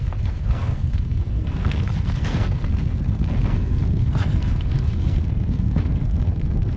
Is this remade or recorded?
remade